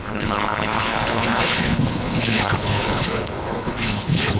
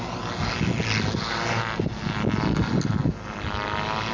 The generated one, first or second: first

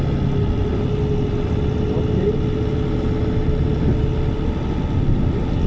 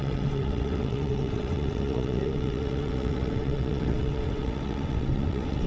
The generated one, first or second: second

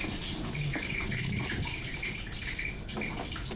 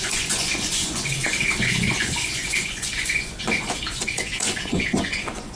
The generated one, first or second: second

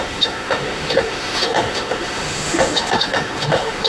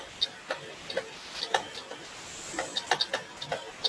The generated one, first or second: first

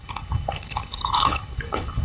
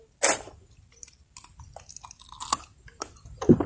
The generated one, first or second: first